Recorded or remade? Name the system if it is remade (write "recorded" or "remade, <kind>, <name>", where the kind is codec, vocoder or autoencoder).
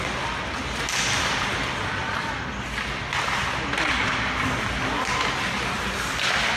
recorded